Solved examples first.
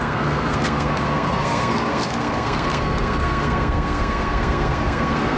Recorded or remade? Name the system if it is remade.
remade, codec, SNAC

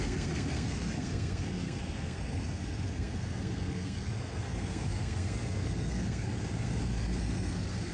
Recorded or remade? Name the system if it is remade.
remade, codec, SNAC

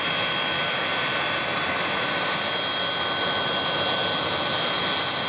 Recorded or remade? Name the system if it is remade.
recorded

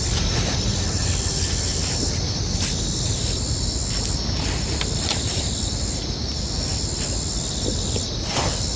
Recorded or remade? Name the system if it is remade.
recorded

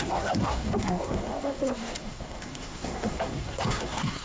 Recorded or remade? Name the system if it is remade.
remade, codec, SNAC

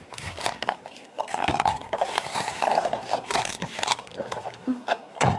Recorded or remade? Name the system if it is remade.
remade, codec, SNAC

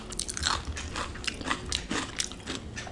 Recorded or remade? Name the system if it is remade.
recorded